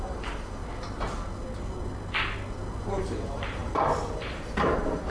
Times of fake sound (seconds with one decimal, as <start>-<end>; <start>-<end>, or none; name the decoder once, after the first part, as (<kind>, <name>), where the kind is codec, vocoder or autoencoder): 0.0-0.6 (vocoder, BigVGAN v2); 2.8-5.1

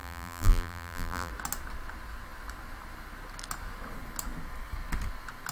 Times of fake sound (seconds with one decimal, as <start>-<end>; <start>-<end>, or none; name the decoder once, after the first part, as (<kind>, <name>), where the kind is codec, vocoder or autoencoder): 0.0-1.3 (vocoder, BigVGAN v2)